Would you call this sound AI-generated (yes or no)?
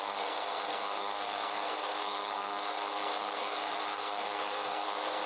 yes